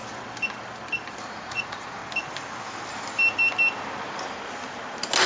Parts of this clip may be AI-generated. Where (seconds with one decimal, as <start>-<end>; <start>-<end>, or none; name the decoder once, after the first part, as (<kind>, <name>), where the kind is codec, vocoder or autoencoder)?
1.2-2.0 (vocoder, Vocos)